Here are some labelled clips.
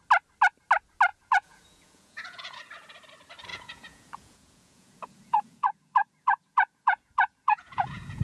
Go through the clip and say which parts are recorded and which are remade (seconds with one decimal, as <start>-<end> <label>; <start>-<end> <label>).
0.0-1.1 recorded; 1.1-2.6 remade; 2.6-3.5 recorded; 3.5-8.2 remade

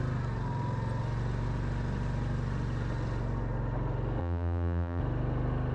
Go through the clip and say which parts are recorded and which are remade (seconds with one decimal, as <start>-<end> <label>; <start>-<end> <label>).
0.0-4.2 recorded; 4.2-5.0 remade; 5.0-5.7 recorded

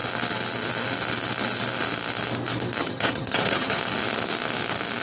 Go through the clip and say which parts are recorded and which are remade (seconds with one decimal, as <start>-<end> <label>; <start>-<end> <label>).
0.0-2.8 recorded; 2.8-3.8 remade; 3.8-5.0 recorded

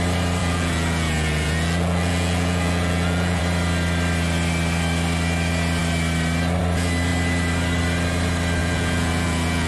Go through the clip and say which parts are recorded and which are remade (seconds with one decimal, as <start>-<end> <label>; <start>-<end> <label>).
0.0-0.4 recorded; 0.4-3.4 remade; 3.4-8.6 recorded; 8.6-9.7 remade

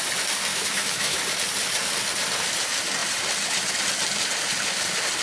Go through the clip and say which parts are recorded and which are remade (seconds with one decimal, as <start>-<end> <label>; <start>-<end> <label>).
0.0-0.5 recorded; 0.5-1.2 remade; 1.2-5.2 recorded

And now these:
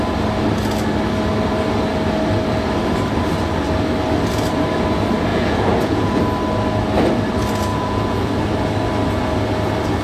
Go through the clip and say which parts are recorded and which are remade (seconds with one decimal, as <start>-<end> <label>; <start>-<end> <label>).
0.0-5.3 recorded; 5.3-6.2 remade; 6.2-7.7 recorded; 7.7-8.3 remade; 8.3-10.0 recorded

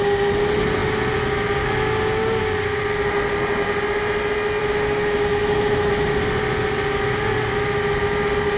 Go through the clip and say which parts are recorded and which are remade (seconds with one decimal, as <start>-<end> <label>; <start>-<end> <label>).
0.0-4.6 recorded; 4.6-5.9 remade; 5.9-8.6 recorded